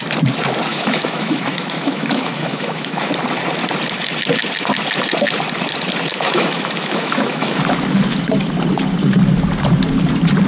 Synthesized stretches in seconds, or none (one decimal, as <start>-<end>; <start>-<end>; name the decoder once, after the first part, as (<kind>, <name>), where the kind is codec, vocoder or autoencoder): 0.7-3.1 (autoencoder, DAC-VAE); 6.1-7.6